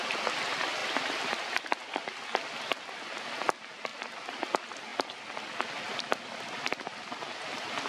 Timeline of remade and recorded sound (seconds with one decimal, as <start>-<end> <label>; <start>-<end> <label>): 0.0-7.9 recorded